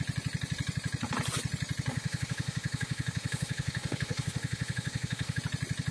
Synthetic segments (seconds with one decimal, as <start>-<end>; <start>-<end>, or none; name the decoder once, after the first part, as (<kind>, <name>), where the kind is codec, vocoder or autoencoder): 1.9-5.4 (autoencoder, DAC-VAE)